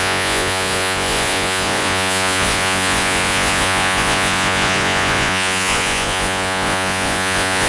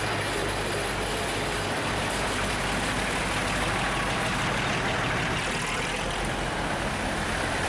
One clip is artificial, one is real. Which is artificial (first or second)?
first